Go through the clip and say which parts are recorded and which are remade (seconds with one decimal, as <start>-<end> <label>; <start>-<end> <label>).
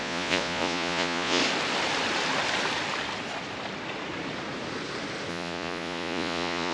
0.0-1.4 remade; 1.4-5.3 recorded; 5.3-6.7 remade